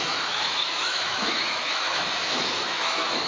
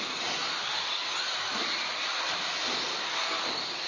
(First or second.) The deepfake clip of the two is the first